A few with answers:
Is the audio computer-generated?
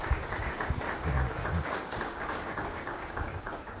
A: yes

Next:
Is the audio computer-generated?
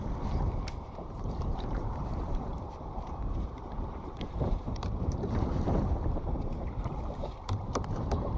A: yes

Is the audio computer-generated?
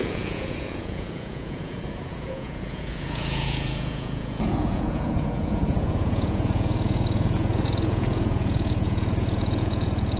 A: yes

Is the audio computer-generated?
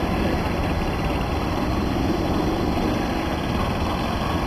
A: no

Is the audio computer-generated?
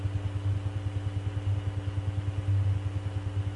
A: no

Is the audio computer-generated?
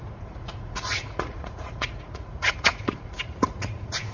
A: yes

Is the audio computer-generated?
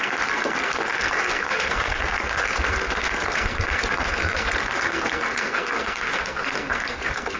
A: yes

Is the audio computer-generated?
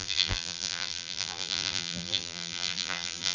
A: yes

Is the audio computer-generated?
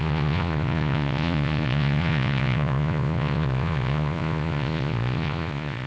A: yes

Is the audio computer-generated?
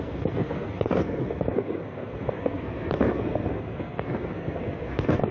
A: yes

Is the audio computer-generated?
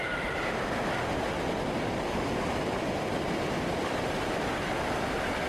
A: no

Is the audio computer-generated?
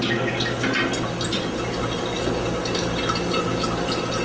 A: no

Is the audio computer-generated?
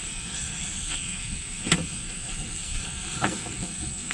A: yes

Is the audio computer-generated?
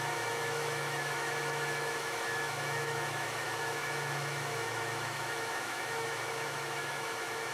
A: yes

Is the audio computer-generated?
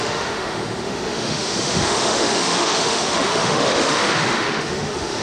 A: yes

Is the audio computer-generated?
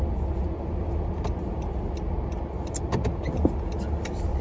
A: no